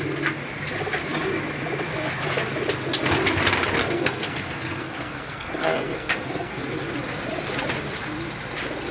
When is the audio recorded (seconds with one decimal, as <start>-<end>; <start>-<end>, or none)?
0.0-3.8; 6.6-8.9